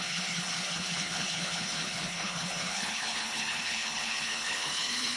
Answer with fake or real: fake